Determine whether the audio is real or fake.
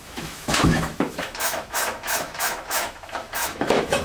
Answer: fake